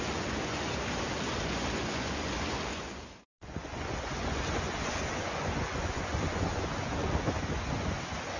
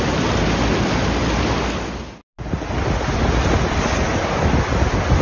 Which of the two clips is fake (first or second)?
first